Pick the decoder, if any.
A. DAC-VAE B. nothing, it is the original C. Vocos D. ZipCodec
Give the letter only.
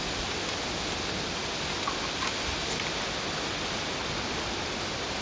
B